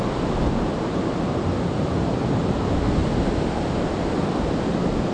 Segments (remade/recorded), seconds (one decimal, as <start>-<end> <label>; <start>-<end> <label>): 0.0-5.1 recorded